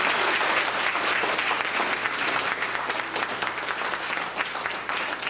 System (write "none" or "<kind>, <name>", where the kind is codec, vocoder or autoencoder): none